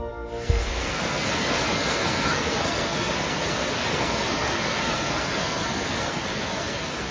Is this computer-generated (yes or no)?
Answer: yes